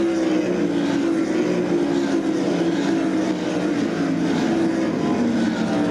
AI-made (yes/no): no